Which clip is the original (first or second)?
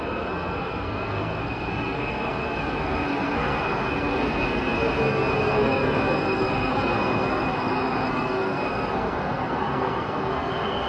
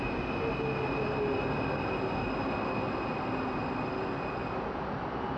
second